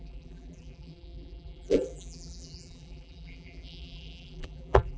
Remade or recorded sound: remade